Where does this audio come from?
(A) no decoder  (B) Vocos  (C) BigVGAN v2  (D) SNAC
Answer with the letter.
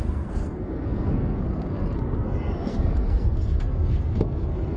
D